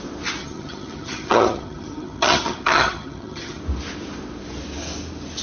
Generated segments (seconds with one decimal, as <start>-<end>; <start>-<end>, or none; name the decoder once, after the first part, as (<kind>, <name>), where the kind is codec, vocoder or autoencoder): 0.4-3.6 (vocoder, HiFi-GAN)